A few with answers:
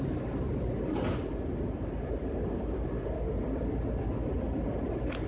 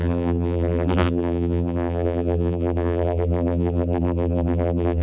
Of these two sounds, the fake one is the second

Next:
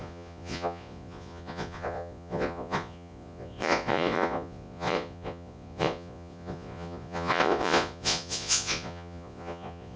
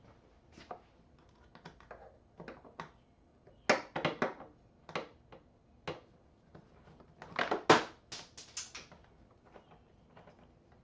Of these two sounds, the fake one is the first